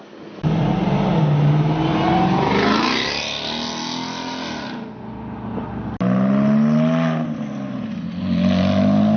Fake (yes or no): no